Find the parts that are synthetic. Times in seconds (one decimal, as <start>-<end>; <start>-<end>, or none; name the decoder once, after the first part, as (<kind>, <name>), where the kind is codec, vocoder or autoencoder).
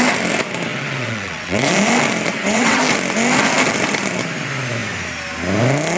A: 0.7-1.7 (vocoder, WaveNeXt); 2.3-2.8